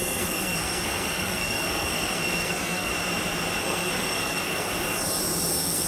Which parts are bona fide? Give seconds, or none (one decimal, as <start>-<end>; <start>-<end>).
2.9-3.6; 4.7-5.5